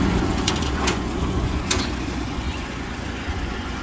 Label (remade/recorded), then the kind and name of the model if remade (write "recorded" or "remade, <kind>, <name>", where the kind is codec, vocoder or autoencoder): remade, vocoder, Vocos